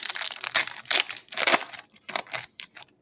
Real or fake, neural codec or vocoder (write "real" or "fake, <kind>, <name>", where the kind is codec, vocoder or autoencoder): fake, vocoder, BigVGAN v2